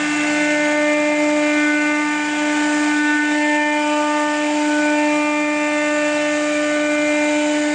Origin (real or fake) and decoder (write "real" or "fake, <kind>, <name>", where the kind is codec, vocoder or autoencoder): real